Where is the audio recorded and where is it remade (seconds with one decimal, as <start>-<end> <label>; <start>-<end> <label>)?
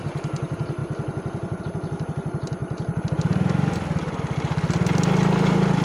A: 0.0-5.8 recorded